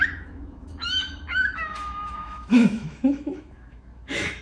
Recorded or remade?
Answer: remade